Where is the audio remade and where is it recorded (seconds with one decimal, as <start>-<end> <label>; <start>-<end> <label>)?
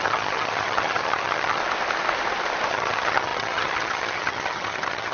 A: 0.0-1.6 remade; 1.6-2.7 recorded; 2.7-5.1 remade